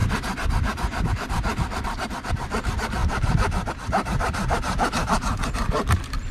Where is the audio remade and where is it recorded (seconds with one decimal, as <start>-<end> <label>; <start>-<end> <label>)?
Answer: 0.0-1.1 recorded; 1.1-6.3 remade